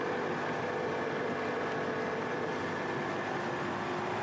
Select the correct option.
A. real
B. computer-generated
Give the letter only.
A